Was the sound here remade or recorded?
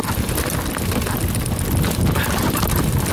recorded